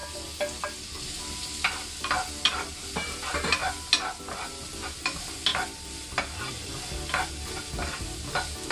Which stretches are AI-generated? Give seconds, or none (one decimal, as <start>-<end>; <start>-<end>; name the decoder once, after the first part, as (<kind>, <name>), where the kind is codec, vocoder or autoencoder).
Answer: none